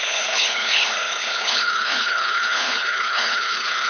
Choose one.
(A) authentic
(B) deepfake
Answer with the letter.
B